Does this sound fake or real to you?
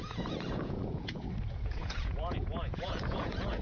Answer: fake